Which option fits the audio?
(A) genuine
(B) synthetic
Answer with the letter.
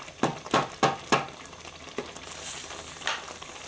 A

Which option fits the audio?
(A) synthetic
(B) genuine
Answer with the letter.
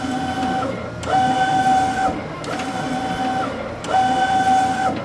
B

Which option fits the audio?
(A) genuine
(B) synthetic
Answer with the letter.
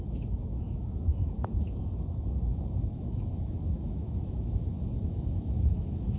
B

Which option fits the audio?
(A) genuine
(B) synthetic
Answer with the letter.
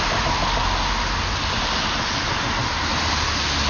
A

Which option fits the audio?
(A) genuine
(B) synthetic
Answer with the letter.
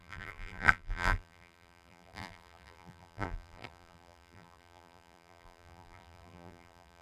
B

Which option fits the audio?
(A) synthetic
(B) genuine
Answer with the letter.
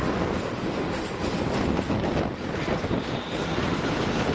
B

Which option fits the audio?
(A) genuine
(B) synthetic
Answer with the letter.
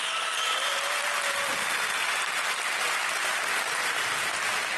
A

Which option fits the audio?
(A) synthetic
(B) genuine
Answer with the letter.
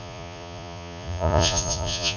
A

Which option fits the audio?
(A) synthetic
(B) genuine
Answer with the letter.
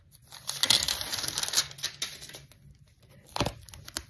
B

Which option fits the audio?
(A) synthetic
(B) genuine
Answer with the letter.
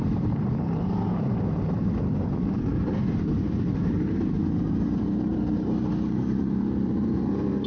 A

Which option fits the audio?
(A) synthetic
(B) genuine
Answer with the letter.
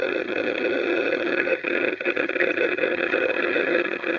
A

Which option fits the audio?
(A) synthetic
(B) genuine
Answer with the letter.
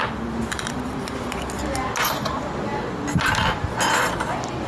B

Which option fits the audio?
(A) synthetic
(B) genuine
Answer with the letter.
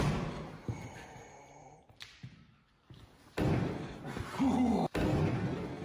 B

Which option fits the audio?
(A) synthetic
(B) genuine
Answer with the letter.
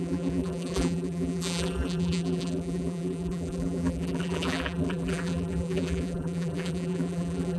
A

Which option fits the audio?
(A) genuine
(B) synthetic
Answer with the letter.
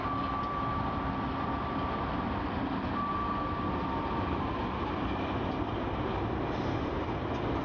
A